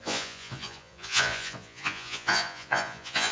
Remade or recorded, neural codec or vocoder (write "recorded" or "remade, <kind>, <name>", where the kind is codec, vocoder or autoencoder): remade, vocoder, Vocos